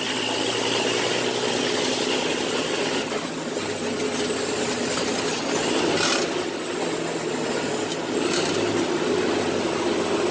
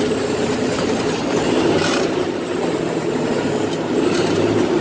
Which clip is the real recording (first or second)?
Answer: first